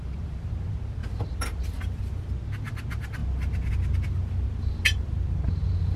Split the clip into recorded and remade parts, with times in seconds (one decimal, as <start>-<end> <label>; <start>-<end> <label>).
0.0-6.0 recorded